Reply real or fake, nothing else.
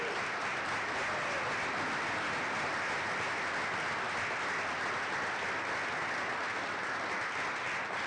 real